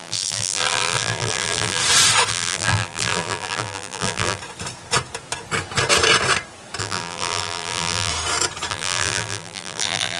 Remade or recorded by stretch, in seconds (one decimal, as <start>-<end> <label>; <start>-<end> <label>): 0.0-1.8 remade; 1.8-2.3 recorded; 2.3-4.4 remade; 4.4-6.8 recorded; 6.8-8.1 remade; 8.1-8.7 recorded; 8.7-10.2 remade